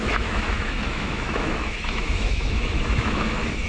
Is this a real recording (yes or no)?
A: no